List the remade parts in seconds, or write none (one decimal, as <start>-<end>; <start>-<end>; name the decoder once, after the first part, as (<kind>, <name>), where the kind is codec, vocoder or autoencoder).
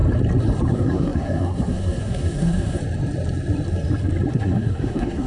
0.7-2.8 (codec, SNAC); 4.3-5.3